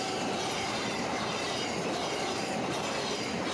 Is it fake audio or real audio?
real